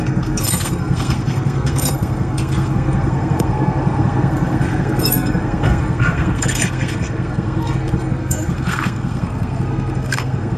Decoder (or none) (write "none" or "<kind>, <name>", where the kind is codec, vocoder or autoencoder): codec, SNAC